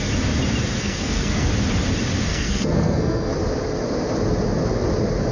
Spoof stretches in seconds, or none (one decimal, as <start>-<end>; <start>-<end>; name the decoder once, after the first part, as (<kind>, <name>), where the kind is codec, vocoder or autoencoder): 0.8-1.5 (codec, SNAC); 2.3-3.3

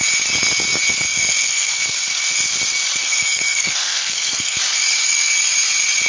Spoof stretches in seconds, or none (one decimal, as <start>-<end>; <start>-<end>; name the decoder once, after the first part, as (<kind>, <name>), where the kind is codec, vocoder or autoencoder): 1.1-1.8 (codec, SNAC); 3.0-4.6

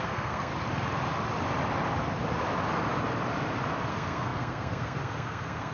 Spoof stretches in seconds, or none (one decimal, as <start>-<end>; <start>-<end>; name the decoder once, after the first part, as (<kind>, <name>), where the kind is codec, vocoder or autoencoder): 0.0-0.5 (codec, SNAC); 3.9-5.7

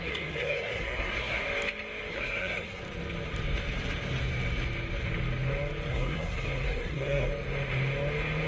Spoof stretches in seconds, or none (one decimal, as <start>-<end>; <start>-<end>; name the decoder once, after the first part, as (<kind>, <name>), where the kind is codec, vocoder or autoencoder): 0.0-1.4 (codec, SNAC); 2.1-2.8; 5.9-7.3

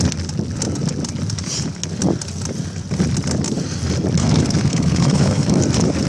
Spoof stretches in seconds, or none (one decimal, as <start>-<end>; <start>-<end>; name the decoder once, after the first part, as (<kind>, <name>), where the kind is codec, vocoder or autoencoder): 4.2-5.6 (codec, SNAC)

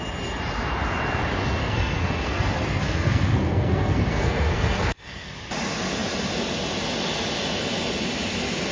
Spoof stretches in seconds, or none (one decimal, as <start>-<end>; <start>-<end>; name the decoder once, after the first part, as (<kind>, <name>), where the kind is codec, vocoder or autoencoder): 1.6-5.3 (codec, SNAC)

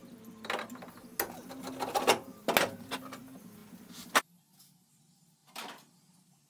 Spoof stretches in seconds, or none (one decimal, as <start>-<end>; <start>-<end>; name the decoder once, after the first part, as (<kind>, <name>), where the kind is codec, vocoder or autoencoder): none

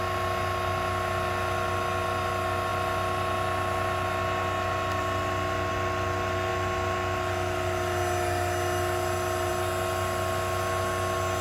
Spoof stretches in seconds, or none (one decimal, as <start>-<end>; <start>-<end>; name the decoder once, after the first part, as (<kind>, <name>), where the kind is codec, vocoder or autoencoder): none